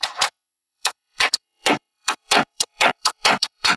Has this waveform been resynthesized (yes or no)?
yes